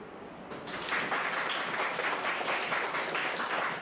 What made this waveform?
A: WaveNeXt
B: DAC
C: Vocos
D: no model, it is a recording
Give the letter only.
D